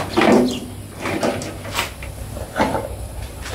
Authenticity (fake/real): real